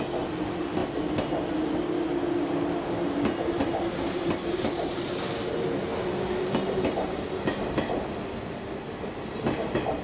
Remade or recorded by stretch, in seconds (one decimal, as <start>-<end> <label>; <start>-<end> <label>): 0.0-10.0 recorded